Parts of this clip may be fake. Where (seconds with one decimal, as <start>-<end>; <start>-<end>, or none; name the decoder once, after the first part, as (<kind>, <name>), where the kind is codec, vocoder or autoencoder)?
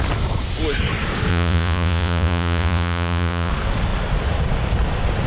1.3-3.5 (vocoder, Vocos)